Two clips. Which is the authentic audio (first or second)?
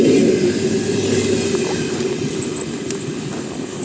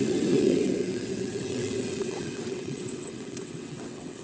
first